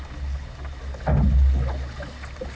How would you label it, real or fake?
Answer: real